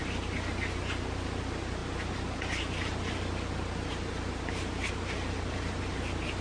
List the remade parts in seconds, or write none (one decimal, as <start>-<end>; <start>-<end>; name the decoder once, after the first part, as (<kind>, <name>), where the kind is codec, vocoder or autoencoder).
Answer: none